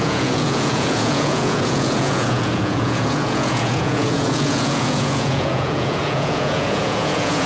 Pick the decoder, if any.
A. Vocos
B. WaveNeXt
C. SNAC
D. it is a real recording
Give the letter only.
A